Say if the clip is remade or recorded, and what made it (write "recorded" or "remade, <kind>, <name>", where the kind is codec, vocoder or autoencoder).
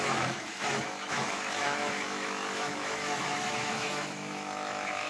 remade, autoencoder, DAC-VAE